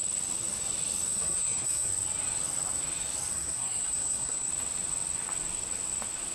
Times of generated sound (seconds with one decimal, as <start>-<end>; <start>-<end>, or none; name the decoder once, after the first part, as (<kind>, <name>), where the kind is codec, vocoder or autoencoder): 1.1-1.9 (codec, SNAC); 3.3-4.5

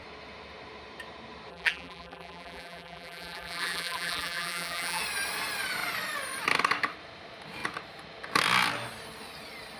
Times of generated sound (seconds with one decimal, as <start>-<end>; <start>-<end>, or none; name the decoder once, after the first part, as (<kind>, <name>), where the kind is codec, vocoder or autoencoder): 1.5-5.0 (vocoder, BigVGAN v2)

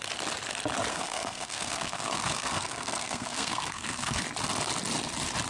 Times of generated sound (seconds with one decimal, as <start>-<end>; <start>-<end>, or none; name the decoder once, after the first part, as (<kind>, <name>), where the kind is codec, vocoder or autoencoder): 0.9-4.2 (codec, SNAC)

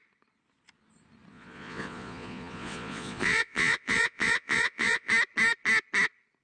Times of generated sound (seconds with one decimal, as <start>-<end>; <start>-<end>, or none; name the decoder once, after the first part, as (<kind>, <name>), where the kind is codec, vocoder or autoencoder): 1.3-5.1 (vocoder, Vocos)

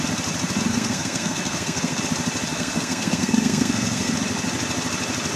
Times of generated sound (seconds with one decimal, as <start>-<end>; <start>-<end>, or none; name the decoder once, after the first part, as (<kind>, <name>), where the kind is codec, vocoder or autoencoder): 0.7-2.0 (codec, SNAC); 2.5-4.1

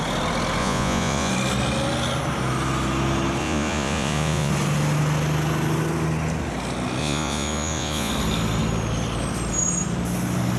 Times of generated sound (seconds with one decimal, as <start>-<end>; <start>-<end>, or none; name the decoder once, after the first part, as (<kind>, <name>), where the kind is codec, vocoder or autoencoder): 0.6-1.3 (vocoder, Vocos); 3.4-4.5; 7.0-8.1

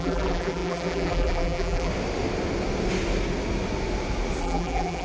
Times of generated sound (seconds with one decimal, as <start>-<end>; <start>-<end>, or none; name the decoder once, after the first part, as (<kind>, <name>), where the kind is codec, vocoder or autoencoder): 0.0-1.9 (vocoder, BigVGAN v2); 4.4-5.0